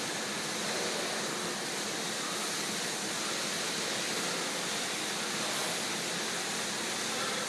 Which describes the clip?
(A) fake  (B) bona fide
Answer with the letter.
B